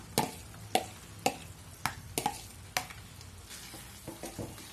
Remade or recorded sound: recorded